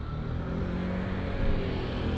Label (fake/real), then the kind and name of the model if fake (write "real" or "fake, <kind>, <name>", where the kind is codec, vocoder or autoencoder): real